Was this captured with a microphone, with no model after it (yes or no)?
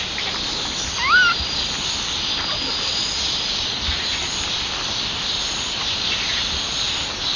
yes